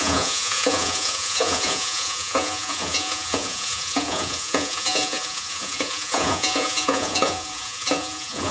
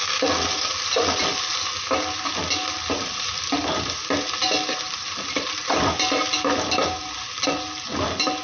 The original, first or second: second